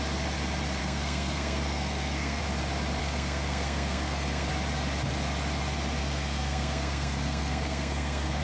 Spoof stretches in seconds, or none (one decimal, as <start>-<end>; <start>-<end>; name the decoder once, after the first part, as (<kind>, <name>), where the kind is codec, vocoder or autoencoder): 0.8-2.4 (codec, SNAC); 3.0-4.5; 6.0-8.4